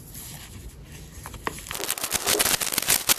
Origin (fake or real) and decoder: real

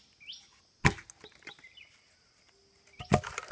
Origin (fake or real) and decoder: real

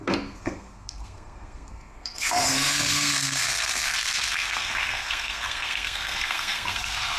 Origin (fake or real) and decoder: fake, codec, SNAC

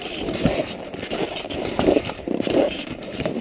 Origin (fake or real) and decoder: fake, vocoder, BigVGAN v2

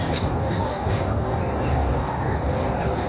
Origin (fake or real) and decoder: fake, codec, DAC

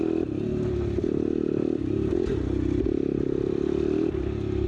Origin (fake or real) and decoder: real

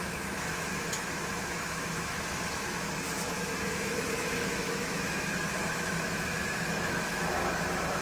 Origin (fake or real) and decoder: fake, autoencoder, DAC-VAE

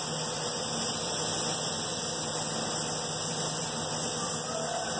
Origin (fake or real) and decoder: real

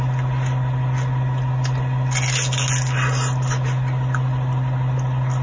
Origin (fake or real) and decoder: real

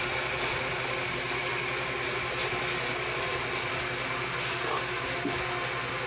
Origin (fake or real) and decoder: real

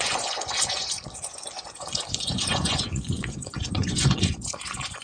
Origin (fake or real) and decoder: fake, vocoder, Vocos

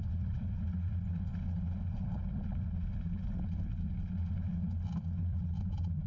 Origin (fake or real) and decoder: real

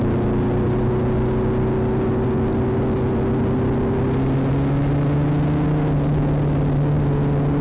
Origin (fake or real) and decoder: real